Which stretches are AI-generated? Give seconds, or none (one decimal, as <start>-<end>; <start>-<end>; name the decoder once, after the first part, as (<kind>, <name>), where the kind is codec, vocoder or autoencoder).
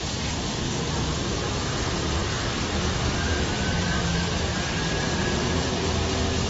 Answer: 2.2-6.1 (vocoder, BigVGAN v2)